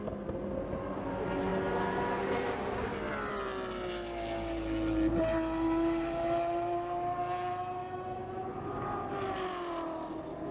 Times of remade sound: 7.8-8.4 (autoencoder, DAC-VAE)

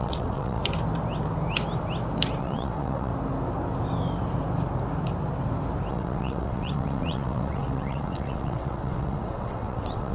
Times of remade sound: 0.0-0.6 (vocoder, WaveNeXt); 2.4-3.1; 5.9-10.1

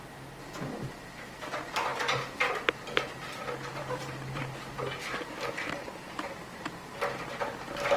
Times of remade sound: 3.7-4.4 (vocoder, BigVGAN v2)

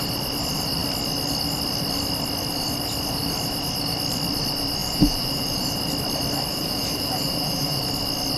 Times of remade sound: 4.8-5.9 (vocoder, BigVGAN v2); 6.5-7.8

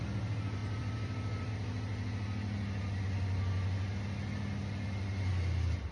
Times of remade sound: 0.6-1.5 (vocoder, BigVGAN v2)

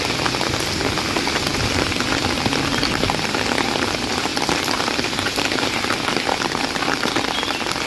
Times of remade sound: none

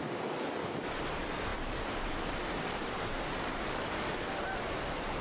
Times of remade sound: none